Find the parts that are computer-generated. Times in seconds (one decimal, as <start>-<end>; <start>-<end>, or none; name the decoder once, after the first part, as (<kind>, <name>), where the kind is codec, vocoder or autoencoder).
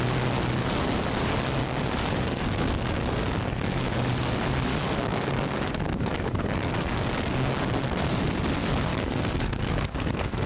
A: 1.6-3.9 (codec, DAC); 4.7-7.6; 8.9-10.5